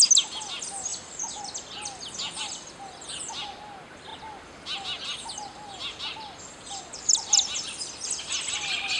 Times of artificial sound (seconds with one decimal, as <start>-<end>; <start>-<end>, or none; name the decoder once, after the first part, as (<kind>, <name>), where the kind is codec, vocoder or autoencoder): none